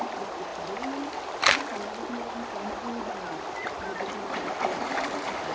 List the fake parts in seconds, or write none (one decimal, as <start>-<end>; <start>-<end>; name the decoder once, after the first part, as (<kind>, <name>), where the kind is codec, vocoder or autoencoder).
none